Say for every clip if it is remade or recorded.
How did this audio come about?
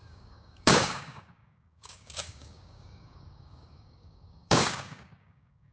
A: remade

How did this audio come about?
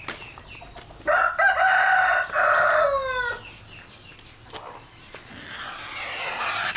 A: recorded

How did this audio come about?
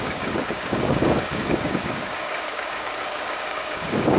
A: remade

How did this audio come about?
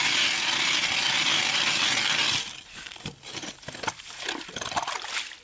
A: recorded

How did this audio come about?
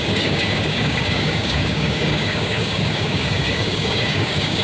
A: remade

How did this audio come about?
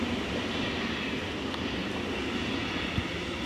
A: recorded